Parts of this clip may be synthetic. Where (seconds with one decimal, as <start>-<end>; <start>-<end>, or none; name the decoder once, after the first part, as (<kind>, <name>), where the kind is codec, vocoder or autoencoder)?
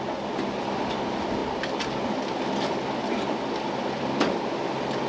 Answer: none